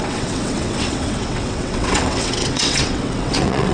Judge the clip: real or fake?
fake